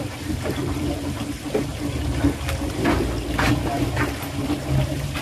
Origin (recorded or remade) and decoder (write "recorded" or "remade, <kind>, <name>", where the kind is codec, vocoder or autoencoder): recorded